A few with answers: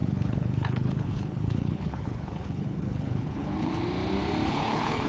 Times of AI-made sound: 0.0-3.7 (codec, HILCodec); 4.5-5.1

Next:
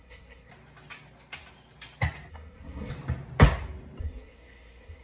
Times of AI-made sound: 0.0-0.5 (codec, SNAC); 2.3-2.9; 4.0-5.0

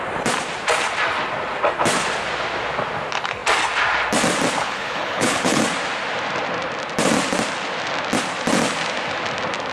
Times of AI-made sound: 4.6-5.6 (codec, HILCodec)

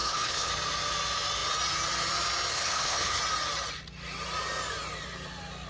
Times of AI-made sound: 0.0-0.5 (codec, HILCodec); 2.5-3.2